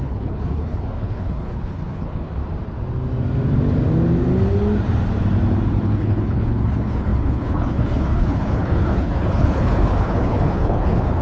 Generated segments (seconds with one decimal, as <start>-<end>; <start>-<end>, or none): 0.0-2.4; 5.8-11.2